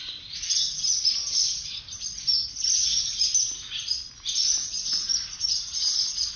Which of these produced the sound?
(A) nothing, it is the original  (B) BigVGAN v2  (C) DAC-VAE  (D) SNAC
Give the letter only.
A